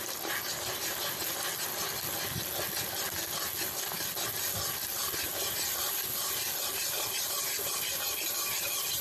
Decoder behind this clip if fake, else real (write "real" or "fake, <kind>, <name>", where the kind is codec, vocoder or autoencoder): real